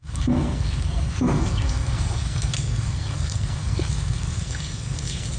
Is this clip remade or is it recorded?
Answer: remade